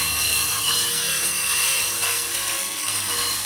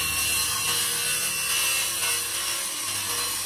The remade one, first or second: first